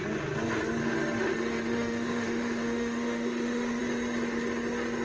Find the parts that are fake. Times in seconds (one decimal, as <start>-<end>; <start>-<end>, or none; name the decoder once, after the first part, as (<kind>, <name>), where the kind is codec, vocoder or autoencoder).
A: 0.8-3.8 (autoencoder, DAC-VAE)